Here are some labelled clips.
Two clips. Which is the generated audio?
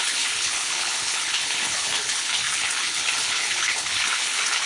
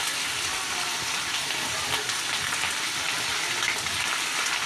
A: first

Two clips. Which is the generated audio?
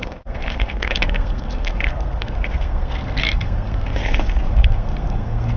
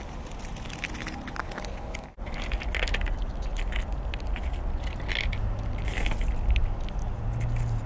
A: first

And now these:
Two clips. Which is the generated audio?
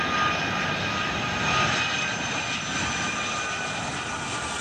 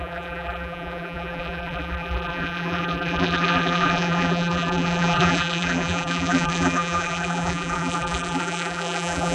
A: second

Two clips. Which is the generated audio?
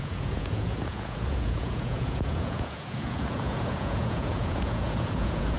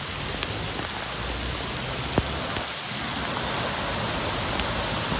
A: first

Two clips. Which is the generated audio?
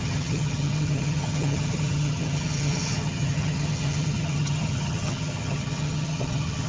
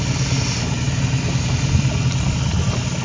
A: first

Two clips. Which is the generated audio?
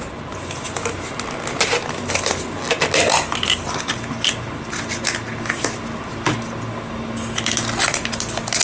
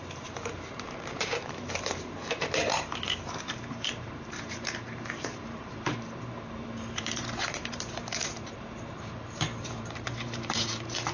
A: second